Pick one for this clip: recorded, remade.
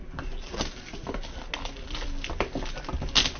recorded